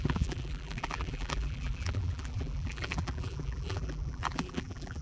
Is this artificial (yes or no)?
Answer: yes